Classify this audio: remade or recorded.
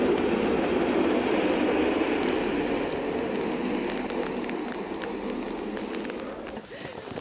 recorded